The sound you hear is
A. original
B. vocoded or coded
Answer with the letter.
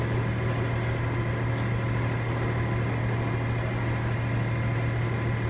A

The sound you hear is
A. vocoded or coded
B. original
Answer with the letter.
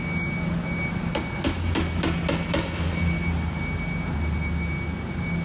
B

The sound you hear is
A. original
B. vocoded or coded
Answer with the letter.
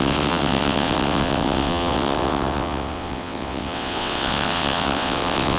B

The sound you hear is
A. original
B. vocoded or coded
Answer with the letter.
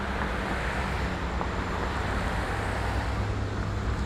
A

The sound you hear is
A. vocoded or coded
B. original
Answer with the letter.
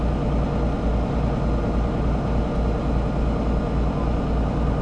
B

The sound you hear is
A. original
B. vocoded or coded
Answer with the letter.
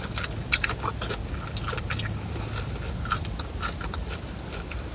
A